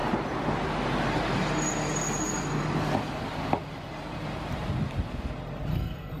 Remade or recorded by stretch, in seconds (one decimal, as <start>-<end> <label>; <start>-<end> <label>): 0.0-5.7 recorded; 5.7-6.2 remade